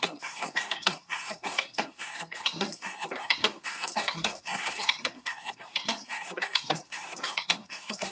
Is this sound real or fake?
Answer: fake